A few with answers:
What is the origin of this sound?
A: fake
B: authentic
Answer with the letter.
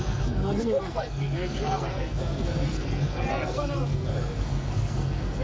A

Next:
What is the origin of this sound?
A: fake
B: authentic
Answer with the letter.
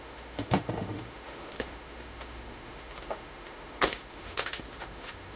A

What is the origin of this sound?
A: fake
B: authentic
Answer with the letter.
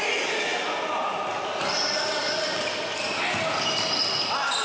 B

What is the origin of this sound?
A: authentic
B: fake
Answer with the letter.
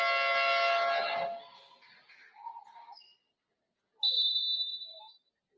A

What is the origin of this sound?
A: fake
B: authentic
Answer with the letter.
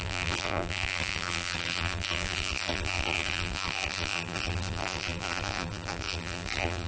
A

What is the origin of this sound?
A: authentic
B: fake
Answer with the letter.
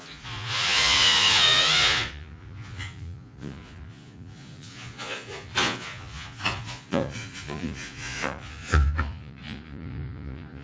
B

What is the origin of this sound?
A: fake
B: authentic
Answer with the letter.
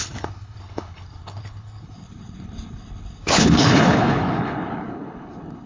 A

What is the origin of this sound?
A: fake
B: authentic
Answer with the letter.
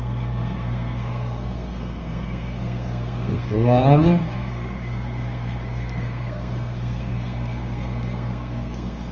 A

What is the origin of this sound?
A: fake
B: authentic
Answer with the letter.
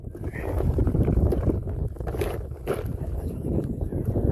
B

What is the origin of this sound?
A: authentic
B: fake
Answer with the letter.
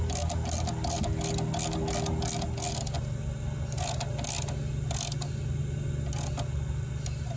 A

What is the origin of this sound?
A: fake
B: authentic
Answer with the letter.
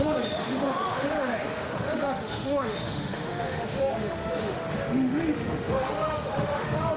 A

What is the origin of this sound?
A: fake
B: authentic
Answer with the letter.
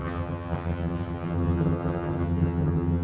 A